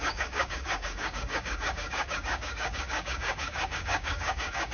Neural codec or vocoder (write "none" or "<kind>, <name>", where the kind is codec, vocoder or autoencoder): codec, DAC